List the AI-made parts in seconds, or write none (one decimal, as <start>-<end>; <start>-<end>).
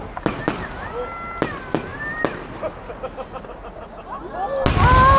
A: none